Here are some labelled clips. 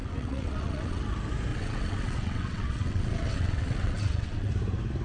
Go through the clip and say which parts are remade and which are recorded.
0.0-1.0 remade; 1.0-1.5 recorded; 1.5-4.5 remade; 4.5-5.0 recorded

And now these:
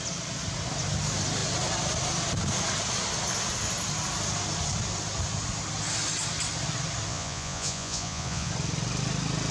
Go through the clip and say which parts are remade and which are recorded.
0.0-7.1 recorded; 7.1-8.5 remade; 8.5-9.5 recorded

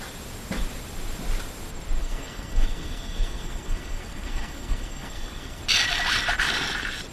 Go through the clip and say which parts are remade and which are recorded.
0.0-2.0 recorded; 2.0-5.6 remade; 5.6-7.1 recorded